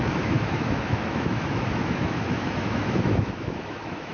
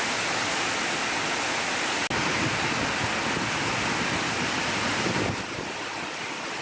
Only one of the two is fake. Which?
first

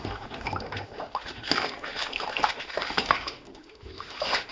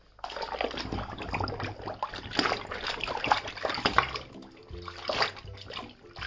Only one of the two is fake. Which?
first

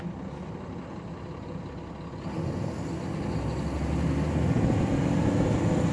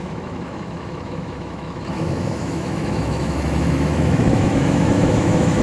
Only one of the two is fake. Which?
second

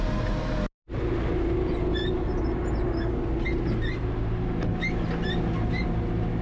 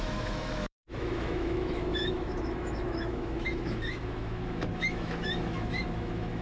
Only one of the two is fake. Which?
second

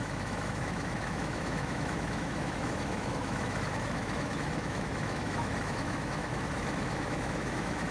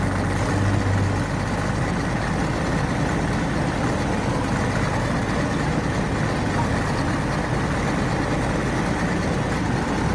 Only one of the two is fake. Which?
first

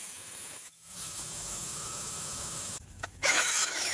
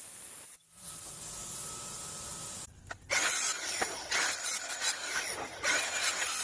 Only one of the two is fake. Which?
first